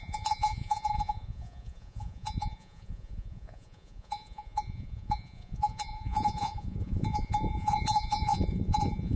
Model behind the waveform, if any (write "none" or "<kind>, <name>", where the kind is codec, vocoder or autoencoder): vocoder, Vocos